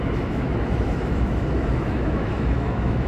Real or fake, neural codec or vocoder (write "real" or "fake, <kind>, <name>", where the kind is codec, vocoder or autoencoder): fake, autoencoder, DAC-VAE